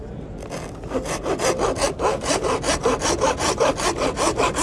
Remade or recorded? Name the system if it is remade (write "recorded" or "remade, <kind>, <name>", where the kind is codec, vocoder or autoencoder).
recorded